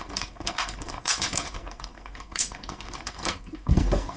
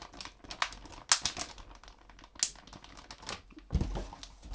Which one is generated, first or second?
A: first